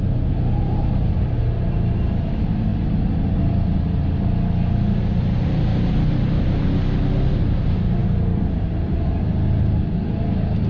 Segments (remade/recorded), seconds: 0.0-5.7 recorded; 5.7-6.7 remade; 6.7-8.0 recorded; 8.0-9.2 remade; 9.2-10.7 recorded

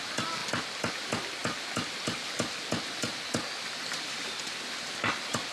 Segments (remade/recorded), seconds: 0.0-5.5 recorded